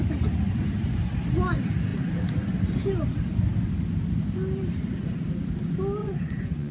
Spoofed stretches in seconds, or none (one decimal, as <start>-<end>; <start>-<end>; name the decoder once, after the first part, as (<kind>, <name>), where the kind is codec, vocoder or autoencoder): 6.0-6.7 (vocoder, Vocos)